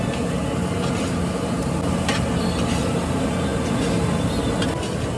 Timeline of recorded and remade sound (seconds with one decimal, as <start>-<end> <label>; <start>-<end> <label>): 0.0-5.2 recorded